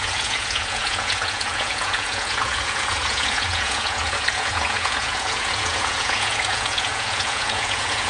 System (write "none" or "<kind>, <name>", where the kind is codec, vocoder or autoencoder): vocoder, Vocos